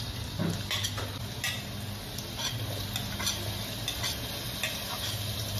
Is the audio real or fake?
real